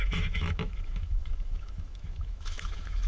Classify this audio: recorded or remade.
remade